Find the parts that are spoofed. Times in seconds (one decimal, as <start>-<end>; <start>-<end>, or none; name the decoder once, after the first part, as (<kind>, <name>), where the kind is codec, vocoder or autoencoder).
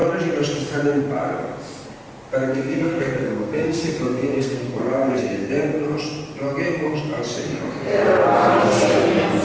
2.5-5.5 (codec, SNAC); 8.0-8.9